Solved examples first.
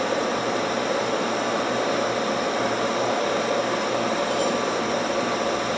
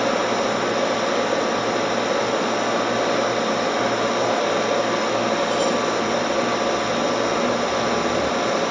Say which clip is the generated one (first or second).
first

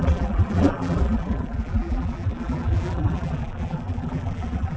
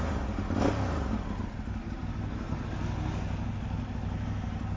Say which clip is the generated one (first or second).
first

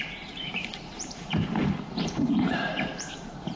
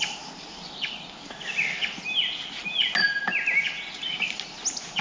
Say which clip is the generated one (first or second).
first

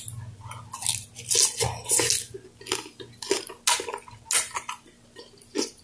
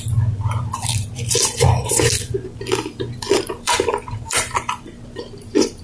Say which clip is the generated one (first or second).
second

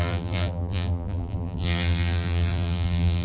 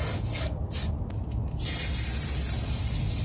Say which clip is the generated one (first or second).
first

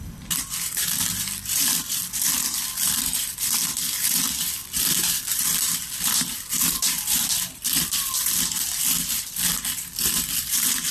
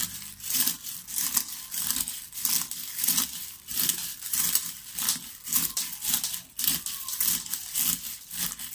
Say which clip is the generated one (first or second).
first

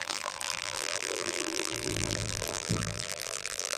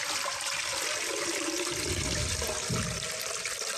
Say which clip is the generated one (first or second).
first